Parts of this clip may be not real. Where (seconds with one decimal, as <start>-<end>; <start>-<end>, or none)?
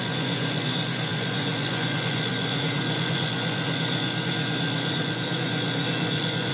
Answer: 0.0-6.5